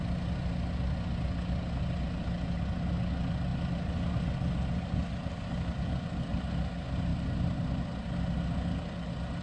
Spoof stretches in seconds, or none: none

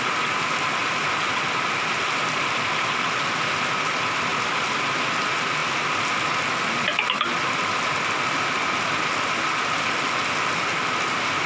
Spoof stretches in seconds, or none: none

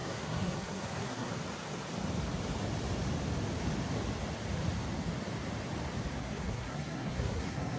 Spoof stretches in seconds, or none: 0.0-1.3 (codec, SNAC); 6.2-7.8